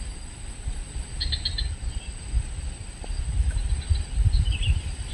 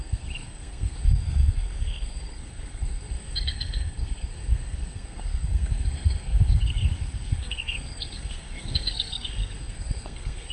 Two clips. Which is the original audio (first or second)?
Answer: first